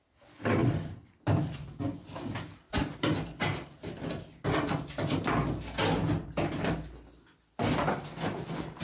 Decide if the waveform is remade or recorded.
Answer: recorded